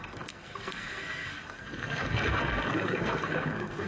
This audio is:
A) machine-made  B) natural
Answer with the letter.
A